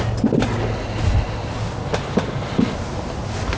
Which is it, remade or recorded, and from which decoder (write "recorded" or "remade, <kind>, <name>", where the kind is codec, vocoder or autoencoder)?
recorded